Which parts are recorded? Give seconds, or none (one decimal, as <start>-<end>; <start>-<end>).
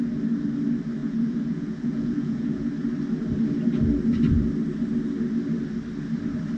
0.0-1.0; 2.7-6.6